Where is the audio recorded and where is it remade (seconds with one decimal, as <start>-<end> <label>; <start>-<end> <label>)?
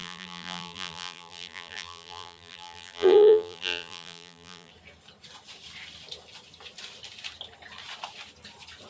0.0-4.7 remade; 4.7-8.9 recorded